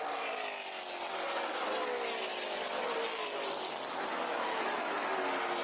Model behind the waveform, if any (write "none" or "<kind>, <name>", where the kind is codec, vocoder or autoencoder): none